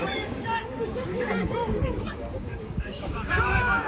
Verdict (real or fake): fake